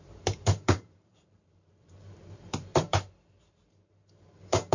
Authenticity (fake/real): fake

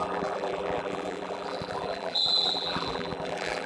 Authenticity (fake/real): fake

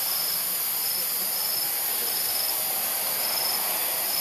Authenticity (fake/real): real